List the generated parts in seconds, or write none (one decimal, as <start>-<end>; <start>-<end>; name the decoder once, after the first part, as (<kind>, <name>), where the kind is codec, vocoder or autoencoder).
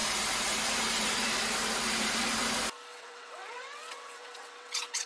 2.9-5.1 (vocoder, WaveNeXt)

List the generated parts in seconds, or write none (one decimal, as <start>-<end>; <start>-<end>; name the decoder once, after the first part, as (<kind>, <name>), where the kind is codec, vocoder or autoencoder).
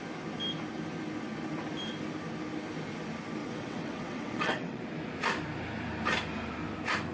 3.4-4.8 (vocoder, WaveNeXt)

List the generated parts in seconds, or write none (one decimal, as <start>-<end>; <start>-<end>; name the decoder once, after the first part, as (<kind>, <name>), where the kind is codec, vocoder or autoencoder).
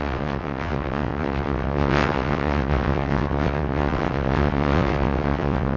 0.0-5.8 (vocoder, WaveNeXt)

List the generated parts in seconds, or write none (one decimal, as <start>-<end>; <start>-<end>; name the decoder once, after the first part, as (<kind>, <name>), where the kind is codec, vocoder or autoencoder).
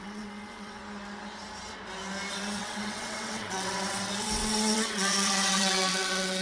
0.0-0.8 (vocoder, WaveNeXt); 2.3-6.4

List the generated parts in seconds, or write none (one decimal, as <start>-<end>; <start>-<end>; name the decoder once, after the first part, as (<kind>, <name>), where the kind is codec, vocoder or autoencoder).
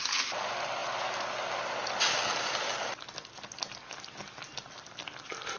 none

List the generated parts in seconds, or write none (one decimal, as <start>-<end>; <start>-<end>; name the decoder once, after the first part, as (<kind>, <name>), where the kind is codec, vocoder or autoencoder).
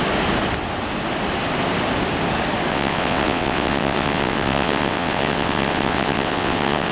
2.7-6.9 (vocoder, WaveNeXt)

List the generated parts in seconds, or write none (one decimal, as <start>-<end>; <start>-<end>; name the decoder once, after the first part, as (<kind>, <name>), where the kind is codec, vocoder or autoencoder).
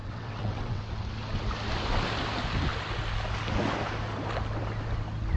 0.0-0.8 (vocoder, WaveNeXt)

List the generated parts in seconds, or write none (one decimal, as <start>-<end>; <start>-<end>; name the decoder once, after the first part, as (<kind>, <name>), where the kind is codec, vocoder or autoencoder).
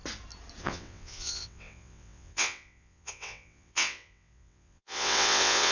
0.6-5.7 (vocoder, WaveNeXt)